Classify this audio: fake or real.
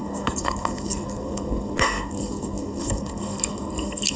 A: fake